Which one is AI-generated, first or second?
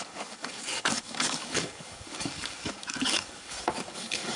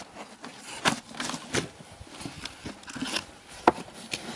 first